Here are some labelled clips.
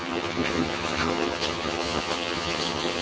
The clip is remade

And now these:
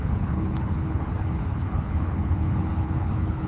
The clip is remade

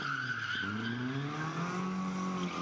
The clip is recorded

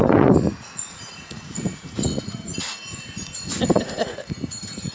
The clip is remade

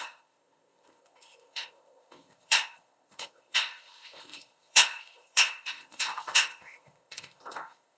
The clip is remade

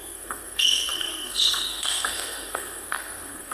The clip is remade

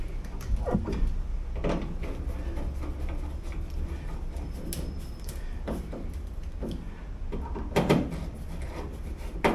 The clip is recorded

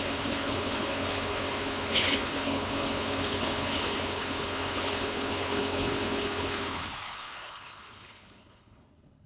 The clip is remade